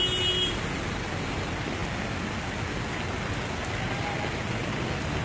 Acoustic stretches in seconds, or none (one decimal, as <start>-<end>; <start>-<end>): 0.0-5.2